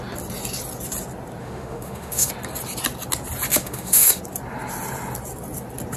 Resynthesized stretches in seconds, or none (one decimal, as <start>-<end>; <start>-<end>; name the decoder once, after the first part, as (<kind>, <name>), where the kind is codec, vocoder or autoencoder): 1.4-2.3 (autoencoder, DAC-VAE); 3.5-4.2